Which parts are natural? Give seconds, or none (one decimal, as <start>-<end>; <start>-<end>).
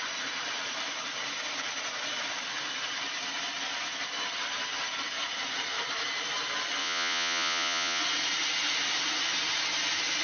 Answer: 0.0-6.8; 8.0-10.2